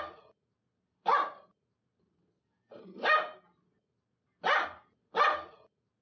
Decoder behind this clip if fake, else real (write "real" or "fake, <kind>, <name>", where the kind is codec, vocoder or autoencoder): real